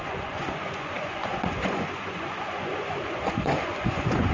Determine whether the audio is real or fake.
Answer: fake